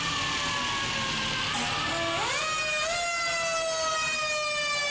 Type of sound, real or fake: real